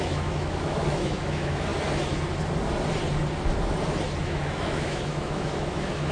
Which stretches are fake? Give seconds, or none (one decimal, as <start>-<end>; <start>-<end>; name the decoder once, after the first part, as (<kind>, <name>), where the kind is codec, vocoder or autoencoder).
0.0-1.7 (autoencoder, DAC-VAE); 4.2-6.1